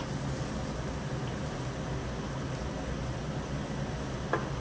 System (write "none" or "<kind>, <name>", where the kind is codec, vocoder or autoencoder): none